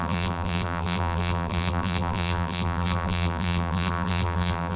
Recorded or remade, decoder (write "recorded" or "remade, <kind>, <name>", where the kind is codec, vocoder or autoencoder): remade, vocoder, BigVGAN v2